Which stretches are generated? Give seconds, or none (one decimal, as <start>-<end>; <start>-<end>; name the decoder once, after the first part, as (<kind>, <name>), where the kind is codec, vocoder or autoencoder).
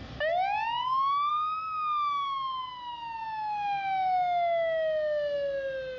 none